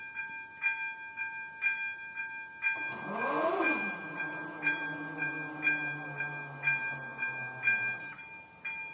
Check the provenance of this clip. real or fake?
real